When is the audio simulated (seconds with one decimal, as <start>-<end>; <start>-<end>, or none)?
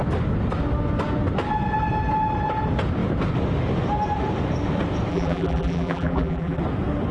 5.1-6.6